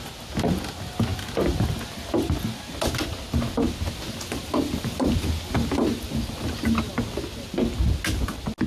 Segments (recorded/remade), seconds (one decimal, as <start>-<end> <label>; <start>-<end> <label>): 0.0-8.7 recorded